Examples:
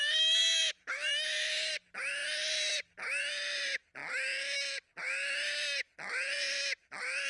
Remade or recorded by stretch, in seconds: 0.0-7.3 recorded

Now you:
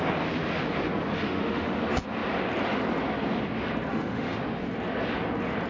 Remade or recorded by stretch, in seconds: 0.0-1.2 recorded; 1.2-1.8 remade; 1.8-3.9 recorded; 3.9-4.6 remade; 4.6-5.7 recorded

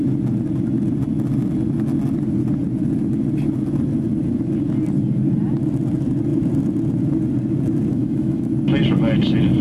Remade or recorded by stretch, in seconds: 0.0-7.9 recorded; 7.9-8.4 remade; 8.4-9.6 recorded

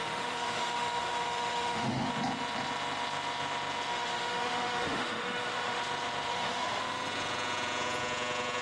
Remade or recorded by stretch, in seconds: 0.0-2.1 remade; 2.1-3.9 recorded; 3.9-5.8 remade; 5.8-6.3 recorded; 6.3-6.8 remade; 6.8-8.6 recorded

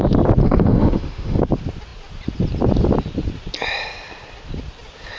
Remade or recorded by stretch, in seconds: 0.0-0.4 recorded; 0.4-1.4 remade; 1.4-5.2 recorded

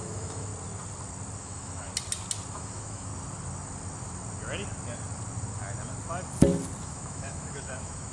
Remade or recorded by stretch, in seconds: 0.0-0.5 remade; 0.5-1.4 recorded; 1.4-1.9 remade; 1.9-2.5 recorded; 2.5-3.1 remade; 3.1-6.8 recorded; 6.8-8.1 remade

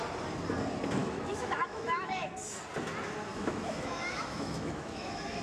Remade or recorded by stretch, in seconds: 0.0-1.0 recorded; 1.0-2.3 remade; 2.3-3.3 recorded; 3.3-5.4 remade

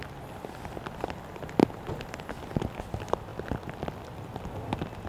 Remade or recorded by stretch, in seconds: 0.0-5.1 recorded